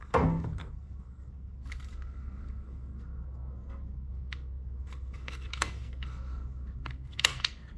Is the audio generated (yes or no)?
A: yes